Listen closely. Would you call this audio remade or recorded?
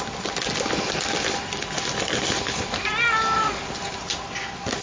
recorded